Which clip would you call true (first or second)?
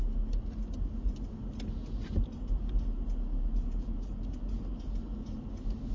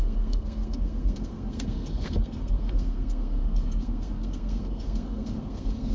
first